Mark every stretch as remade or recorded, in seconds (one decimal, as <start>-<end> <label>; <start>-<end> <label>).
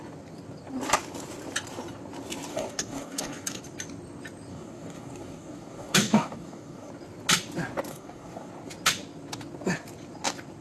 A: 0.0-2.5 recorded; 2.5-3.6 remade; 3.6-4.5 recorded; 4.5-6.9 remade; 6.9-7.9 recorded; 7.9-8.5 remade; 8.5-10.6 recorded